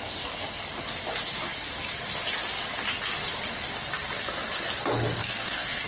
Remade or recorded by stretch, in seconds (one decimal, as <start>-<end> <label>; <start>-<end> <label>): 0.0-5.2 recorded; 5.2-5.9 remade